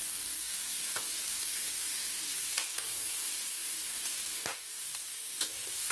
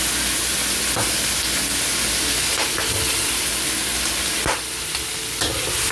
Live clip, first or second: second